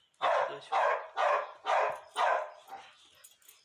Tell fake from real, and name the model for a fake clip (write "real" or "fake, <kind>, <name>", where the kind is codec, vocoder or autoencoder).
real